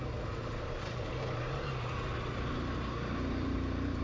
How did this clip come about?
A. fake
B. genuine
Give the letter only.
B